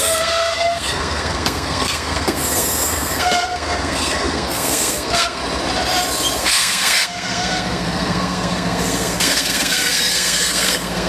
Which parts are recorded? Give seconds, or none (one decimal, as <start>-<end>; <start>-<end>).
5.4-6.4